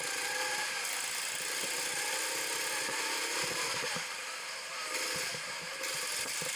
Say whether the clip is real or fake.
real